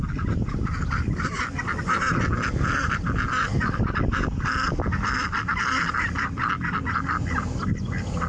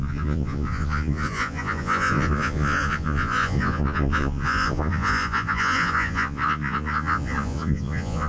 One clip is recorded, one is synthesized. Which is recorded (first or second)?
first